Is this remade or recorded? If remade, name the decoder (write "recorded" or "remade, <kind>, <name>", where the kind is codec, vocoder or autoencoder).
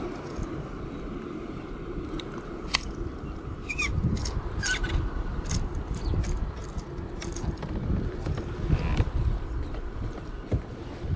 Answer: remade, vocoder, BigVGAN v2